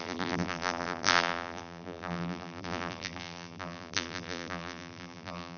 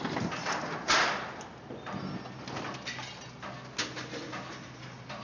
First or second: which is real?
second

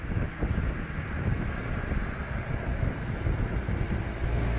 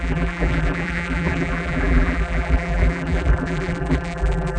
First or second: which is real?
first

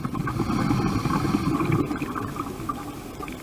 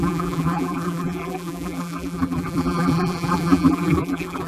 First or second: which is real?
first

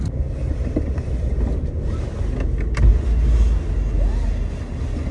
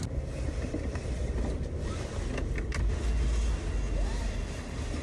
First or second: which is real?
first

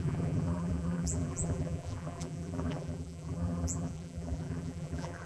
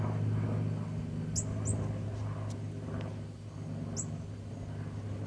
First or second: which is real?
second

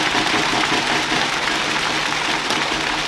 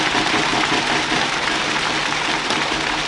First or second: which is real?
first